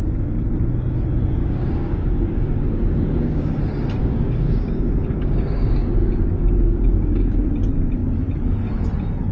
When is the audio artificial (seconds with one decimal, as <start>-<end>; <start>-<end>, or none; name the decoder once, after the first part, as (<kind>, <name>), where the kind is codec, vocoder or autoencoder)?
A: 1.4-3.6 (codec, DAC); 4.0-7.4